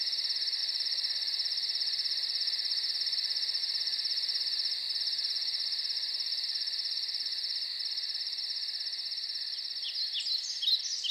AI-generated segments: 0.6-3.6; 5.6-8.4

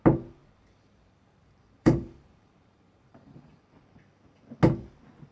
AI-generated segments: 0.4-3.6

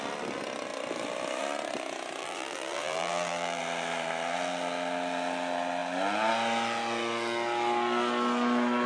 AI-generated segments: 2.2-3.6

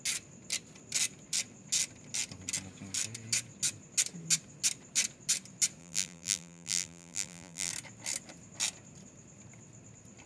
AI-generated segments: 5.8-7.7

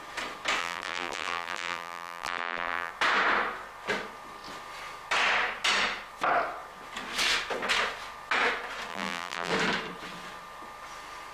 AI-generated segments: 0.6-2.9; 8.9-9.5

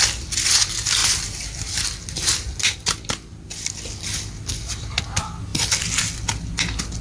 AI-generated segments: none

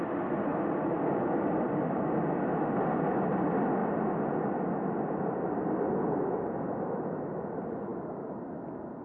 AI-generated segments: 0.5-2.0

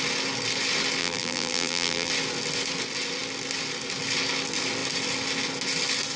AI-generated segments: 1.0-2.1